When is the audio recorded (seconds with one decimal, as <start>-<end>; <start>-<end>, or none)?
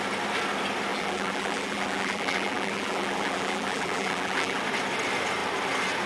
0.0-0.9; 4.6-6.1